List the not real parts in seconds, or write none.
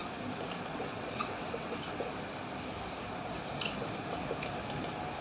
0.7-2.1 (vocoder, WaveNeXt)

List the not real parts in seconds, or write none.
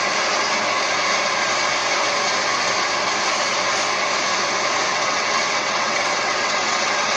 4.9-7.2 (vocoder, WaveNeXt)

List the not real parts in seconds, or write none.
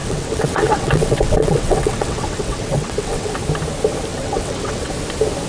0.0-3.3 (vocoder, WaveNeXt); 4.1-4.9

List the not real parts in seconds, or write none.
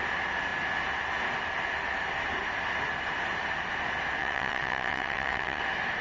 4.2-5.6 (vocoder, WaveNeXt)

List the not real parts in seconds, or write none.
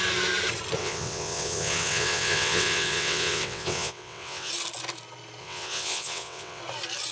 0.8-4.5 (vocoder, WaveNeXt); 5.4-6.6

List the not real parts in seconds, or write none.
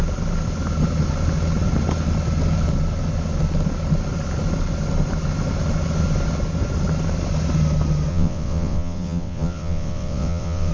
8.1-10.7 (vocoder, WaveNeXt)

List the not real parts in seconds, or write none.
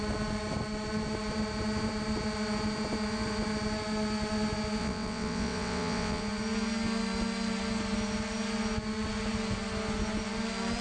4.8-6.2 (vocoder, WaveNeXt)